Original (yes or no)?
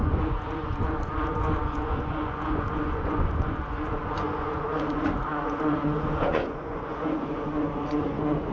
no